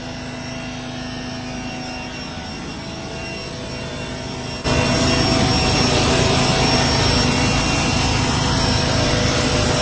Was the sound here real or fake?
real